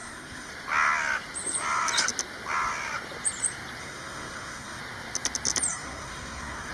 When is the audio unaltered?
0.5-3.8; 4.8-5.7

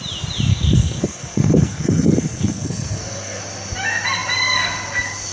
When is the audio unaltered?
0.0-0.5; 3.4-5.3

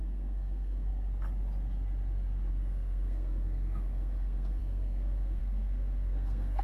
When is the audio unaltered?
0.9-2.5

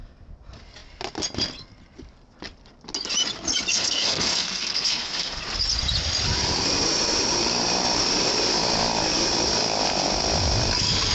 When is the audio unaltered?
0.0-3.7; 5.4-11.1

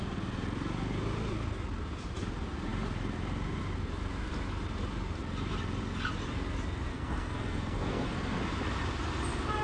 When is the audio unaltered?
0.0-6.9; 8.4-9.6

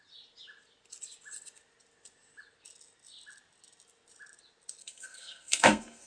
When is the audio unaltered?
0.0-4.8